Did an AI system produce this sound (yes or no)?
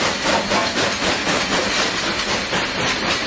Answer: no